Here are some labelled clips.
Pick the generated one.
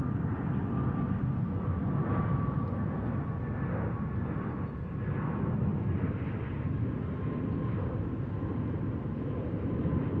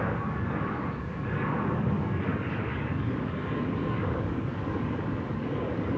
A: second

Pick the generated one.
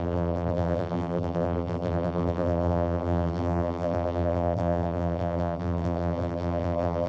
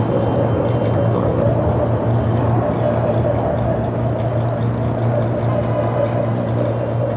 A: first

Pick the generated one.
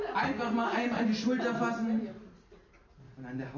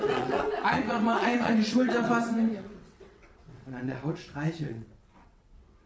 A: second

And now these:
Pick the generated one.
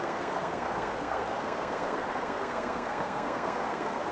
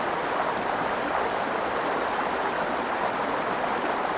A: first